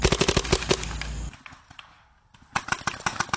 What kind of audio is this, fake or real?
real